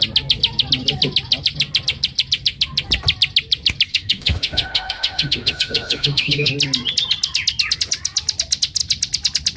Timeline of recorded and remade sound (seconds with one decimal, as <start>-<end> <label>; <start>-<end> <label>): 0.0-3.9 recorded; 3.9-6.5 remade; 6.5-9.6 recorded